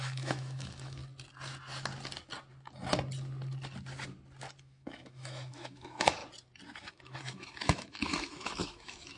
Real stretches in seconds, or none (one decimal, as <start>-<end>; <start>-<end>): 1.0-4.6; 6.2-6.8